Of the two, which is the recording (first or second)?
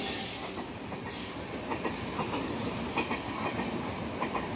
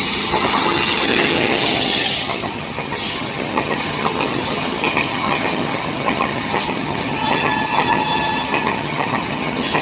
first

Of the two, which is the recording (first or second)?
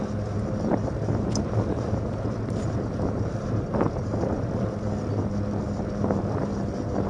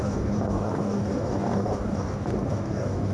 first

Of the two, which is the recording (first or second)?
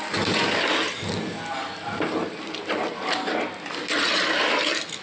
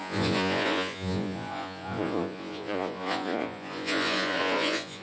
first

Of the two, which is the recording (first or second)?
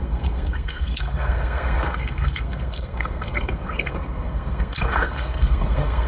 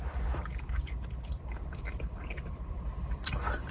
second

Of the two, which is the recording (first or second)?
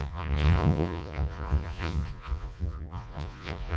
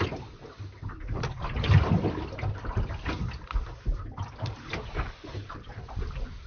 second